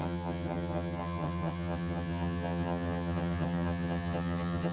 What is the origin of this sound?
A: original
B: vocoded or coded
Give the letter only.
B